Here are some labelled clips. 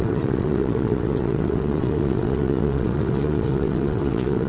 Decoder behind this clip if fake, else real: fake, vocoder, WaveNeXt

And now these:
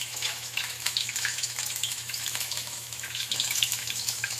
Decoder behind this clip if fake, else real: fake, autoencoder, DAC-VAE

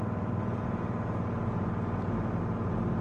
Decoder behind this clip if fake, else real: real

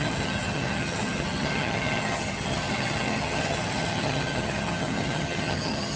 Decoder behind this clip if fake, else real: fake, vocoder, HiFi-GAN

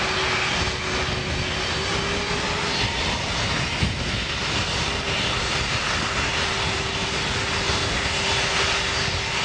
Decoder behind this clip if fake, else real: real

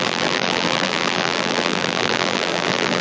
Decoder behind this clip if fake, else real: fake, vocoder, BigVGAN v2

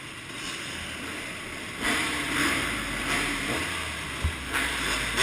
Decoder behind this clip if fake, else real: real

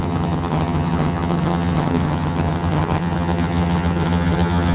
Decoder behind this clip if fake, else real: fake, vocoder, HiFi-GAN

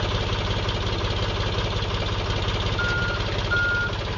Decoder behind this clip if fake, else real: real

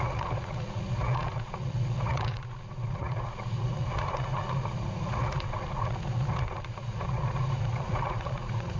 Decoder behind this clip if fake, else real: fake, vocoder, Vocos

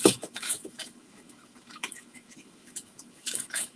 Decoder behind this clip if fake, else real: fake, autoencoder, DAC-VAE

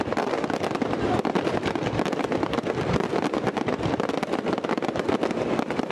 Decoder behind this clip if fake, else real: real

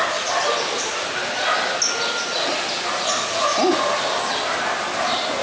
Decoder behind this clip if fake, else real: real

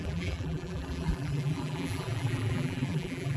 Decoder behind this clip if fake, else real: fake, vocoder, BigVGAN v2